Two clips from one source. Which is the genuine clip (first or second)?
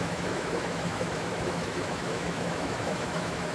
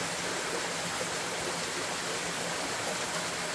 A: second